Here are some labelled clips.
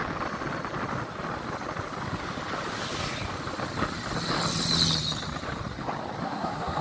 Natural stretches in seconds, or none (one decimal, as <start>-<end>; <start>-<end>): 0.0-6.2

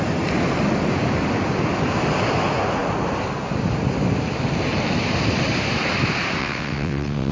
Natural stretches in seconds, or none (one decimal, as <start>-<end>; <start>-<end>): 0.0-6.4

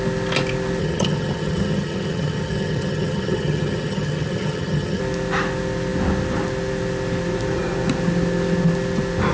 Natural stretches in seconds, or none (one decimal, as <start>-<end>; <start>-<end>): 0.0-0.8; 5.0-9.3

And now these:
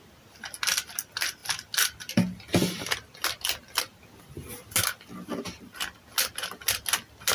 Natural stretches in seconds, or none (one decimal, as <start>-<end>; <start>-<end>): 0.0-7.3